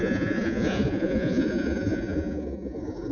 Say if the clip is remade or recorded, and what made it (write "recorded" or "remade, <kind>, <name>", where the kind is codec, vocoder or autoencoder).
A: remade, vocoder, Vocos